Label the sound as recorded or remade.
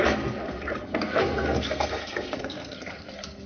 remade